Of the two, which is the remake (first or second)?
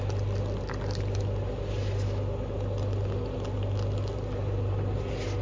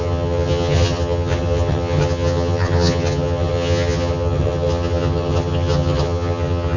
second